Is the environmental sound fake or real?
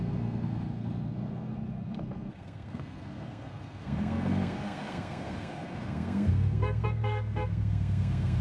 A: fake